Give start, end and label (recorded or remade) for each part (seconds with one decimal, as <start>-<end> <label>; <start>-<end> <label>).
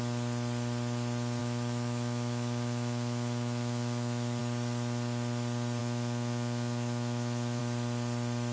0.0-1.4 recorded; 1.4-4.4 remade; 4.4-5.8 recorded; 5.8-7.6 remade; 7.6-8.5 recorded